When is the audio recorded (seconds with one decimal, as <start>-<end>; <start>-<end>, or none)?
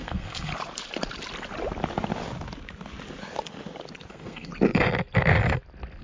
0.5-4.1; 4.5-6.0